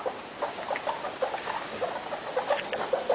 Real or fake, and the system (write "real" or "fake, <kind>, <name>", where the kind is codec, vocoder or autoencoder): real